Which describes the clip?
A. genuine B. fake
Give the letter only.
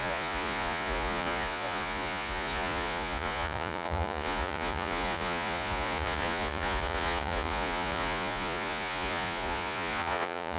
B